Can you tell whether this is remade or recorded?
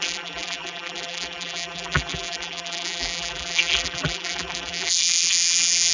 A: remade